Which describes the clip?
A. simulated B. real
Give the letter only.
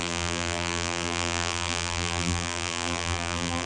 A